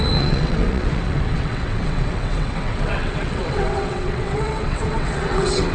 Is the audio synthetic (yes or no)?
yes